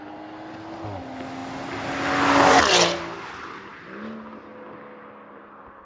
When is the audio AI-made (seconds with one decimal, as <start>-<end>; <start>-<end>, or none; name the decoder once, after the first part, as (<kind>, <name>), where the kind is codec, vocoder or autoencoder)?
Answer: none